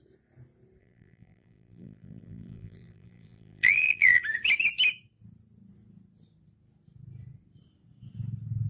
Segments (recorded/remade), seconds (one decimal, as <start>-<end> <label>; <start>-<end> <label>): 0.0-0.8 recorded; 0.8-4.2 remade; 4.2-8.7 recorded